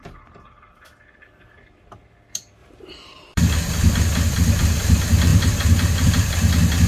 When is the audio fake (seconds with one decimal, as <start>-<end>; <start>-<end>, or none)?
2.6-3.4; 5.3-6.1